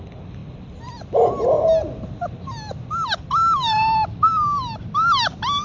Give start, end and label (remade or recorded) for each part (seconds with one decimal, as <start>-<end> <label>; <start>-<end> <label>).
0.0-5.6 recorded